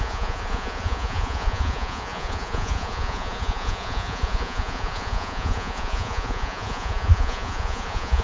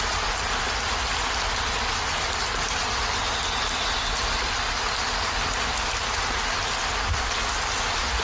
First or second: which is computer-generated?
first